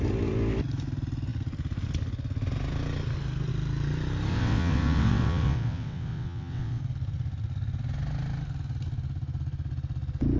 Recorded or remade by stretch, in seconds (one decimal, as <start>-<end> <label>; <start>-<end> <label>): 0.0-4.3 recorded; 4.3-6.8 remade; 6.8-10.4 recorded